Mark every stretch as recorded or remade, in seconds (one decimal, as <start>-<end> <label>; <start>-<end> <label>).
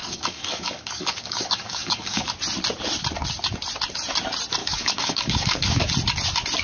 0.0-2.3 remade; 2.3-4.6 recorded; 4.6-5.8 remade; 5.8-6.6 recorded